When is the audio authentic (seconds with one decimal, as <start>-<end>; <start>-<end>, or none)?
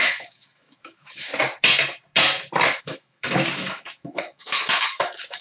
1.3-2.8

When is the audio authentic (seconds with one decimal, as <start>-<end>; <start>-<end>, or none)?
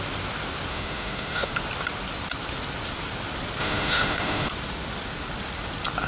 0.0-0.7; 1.5-3.6; 4.5-6.1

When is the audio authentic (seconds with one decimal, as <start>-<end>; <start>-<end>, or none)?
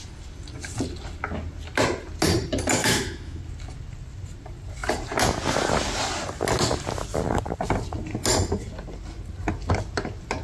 0.0-2.8; 3.4-10.4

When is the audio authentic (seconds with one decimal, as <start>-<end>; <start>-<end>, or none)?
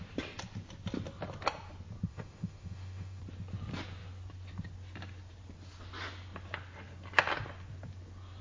0.0-2.1; 3.2-8.4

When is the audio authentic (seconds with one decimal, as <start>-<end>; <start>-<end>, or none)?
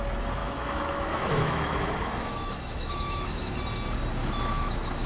0.0-0.4; 3.5-4.2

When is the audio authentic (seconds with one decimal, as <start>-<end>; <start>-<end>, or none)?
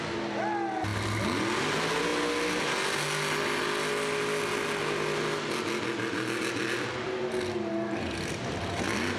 0.0-9.2